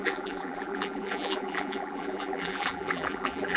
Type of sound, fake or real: fake